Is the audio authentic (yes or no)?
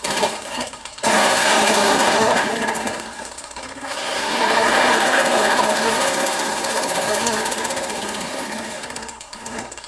no